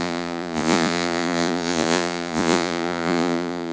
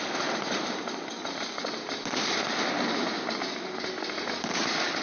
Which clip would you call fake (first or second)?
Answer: first